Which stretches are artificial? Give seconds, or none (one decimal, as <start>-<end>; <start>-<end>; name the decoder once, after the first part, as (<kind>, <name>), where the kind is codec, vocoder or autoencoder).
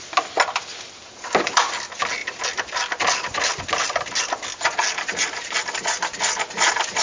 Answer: none